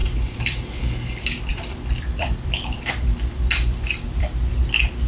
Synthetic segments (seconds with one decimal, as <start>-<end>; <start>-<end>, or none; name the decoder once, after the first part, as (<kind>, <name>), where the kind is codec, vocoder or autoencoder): 0.0-0.6 (vocoder, BigVGAN v2); 1.5-4.6